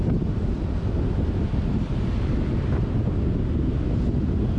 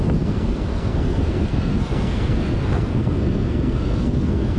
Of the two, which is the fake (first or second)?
second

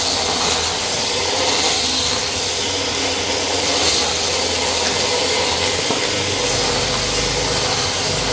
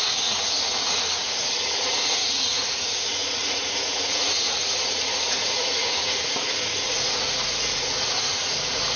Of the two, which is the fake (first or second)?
second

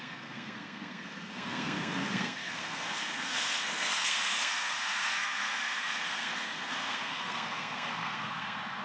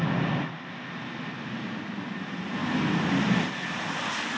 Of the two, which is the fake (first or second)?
first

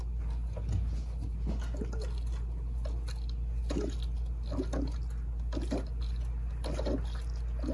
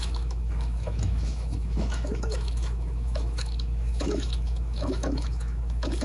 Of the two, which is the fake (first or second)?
second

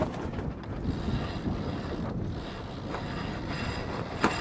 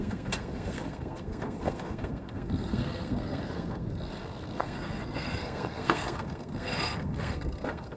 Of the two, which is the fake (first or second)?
second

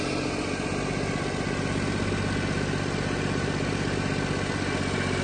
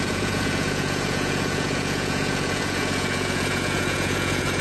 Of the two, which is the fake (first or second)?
second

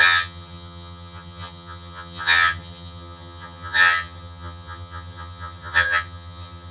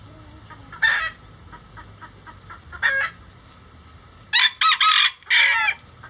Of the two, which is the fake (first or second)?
first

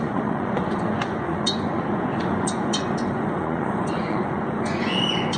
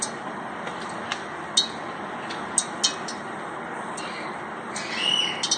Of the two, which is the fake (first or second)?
first